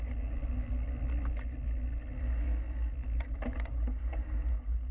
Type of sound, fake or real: real